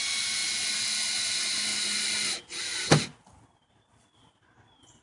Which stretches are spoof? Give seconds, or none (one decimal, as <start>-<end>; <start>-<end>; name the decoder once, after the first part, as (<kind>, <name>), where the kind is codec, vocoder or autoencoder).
none